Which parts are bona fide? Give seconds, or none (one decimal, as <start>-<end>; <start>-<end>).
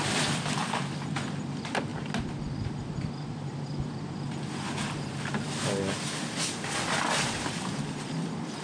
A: 0.6-1.3; 1.9-7.1